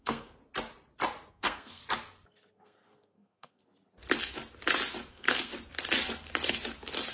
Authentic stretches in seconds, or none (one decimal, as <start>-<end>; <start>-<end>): 0.4-1.3; 1.8-2.5; 3.6-5.1; 5.5-7.1